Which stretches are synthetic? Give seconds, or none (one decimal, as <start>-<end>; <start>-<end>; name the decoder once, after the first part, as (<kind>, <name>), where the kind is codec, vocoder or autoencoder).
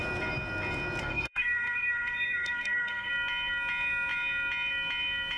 1.0-3.1 (codec, SNAC)